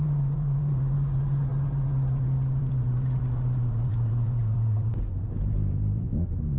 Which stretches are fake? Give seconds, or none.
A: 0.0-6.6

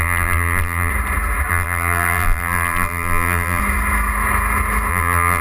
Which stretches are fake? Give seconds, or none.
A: 0.0-0.9; 1.5-3.6; 4.9-5.4

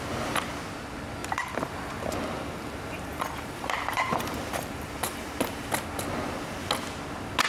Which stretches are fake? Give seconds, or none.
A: 1.2-5.7